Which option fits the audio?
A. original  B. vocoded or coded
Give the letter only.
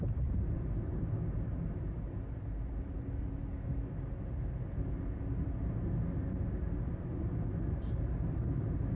A